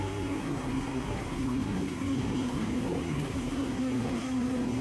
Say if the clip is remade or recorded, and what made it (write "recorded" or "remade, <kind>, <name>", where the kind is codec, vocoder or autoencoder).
remade, codec, SNAC